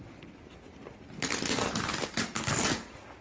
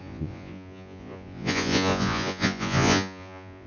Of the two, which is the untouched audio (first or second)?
first